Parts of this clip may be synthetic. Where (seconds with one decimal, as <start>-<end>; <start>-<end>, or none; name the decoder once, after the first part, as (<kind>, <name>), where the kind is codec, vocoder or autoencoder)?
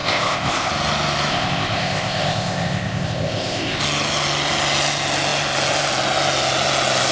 0.0-0.7 (codec, ZipCodec); 1.3-3.8